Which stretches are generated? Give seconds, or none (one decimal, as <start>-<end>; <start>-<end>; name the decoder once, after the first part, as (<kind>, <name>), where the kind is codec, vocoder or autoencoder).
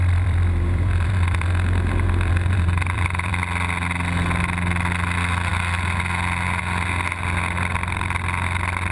0.0-3.4 (vocoder, BigVGAN v2)